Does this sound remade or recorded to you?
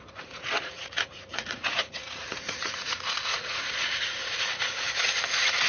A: remade